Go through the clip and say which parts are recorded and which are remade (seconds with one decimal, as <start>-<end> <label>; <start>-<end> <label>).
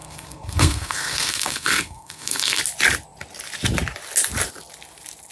0.0-2.6 remade; 2.6-5.3 recorded